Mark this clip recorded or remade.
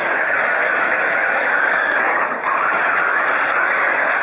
remade